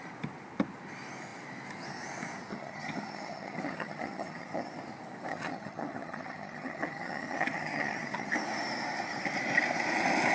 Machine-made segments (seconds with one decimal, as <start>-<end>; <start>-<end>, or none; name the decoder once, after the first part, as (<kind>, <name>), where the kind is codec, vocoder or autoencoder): 2.5-4.7 (vocoder, HiFi-GAN); 5.3-8.3